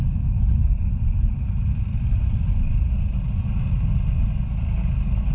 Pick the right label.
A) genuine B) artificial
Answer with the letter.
A